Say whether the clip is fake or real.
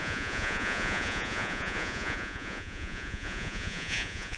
fake